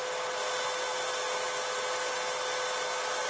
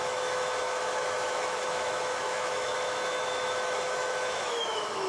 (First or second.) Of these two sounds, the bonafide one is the first